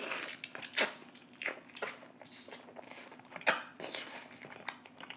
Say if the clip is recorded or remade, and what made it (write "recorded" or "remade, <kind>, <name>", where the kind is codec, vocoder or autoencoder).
recorded